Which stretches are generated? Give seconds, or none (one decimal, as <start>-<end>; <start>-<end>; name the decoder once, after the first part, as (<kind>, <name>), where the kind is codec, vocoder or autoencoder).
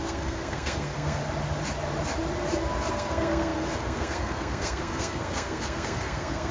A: 0.0-1.2 (codec, SNAC); 2.9-6.5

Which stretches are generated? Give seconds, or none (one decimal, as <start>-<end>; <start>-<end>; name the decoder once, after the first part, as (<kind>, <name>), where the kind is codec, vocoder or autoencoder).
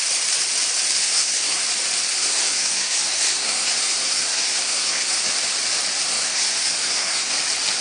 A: 1.0-1.6 (codec, SNAC); 2.1-5.2; 6.1-7.3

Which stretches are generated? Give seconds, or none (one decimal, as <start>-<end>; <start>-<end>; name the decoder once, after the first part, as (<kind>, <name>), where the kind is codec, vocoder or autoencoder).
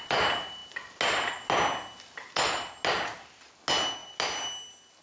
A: none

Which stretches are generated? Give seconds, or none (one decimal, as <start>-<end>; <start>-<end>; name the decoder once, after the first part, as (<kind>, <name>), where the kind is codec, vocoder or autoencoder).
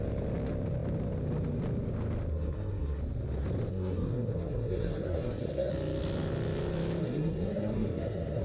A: 2.3-3.0 (codec, SNAC); 3.7-5.7; 7.0-8.4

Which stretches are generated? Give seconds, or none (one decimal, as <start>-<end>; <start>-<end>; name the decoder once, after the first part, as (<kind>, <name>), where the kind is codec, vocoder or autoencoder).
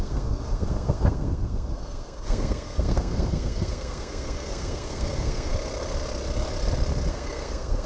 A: 0.0-5.5 (codec, SNAC); 7.1-7.9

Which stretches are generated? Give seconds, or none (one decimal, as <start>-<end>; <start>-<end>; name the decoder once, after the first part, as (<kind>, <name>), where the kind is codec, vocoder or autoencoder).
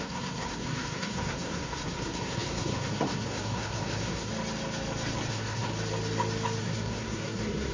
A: 0.0-4.3 (codec, SNAC); 5.3-5.7; 6.6-7.7